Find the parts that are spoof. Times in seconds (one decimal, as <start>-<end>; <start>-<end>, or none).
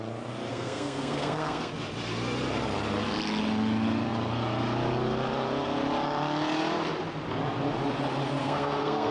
0.5-1.7; 8.4-9.1